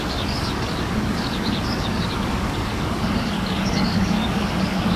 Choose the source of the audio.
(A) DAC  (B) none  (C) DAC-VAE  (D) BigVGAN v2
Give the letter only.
A